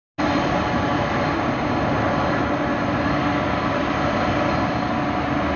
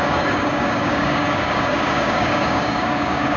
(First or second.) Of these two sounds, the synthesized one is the second